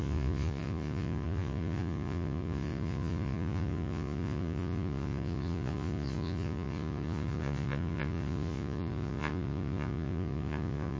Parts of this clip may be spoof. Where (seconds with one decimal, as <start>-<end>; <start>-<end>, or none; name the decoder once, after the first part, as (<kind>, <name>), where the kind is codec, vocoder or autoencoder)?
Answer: 0.0-11.0 (vocoder, Vocos)